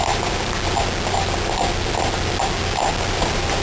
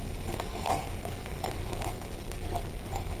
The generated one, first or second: second